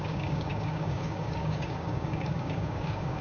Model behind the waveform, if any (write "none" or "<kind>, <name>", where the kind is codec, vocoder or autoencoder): codec, DAC